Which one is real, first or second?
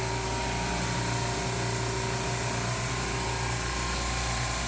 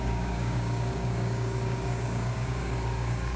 first